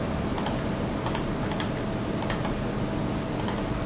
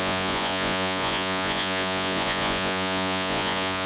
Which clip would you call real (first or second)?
first